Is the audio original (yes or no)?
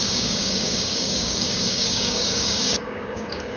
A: no